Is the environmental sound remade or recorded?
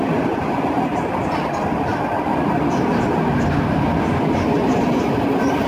recorded